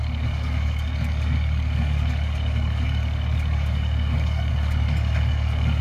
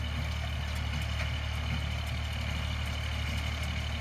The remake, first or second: first